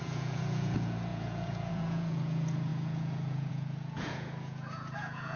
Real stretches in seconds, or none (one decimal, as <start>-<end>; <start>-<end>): none